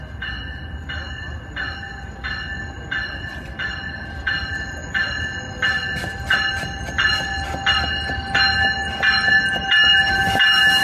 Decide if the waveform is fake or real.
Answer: real